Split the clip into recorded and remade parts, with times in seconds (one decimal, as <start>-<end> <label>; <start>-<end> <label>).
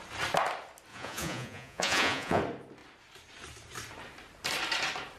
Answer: 0.0-0.9 recorded; 0.9-2.4 remade; 2.4-5.2 recorded